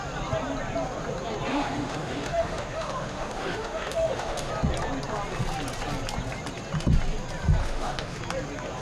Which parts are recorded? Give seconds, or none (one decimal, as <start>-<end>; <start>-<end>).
0.0-1.5; 4.5-7.6; 8.2-8.8